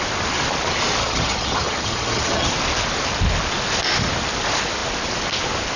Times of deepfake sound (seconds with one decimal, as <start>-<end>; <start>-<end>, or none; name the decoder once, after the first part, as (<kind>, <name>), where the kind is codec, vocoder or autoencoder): 1.0-2.5 (vocoder, HiFi-GAN)